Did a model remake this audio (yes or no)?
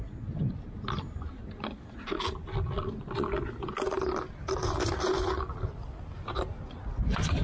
no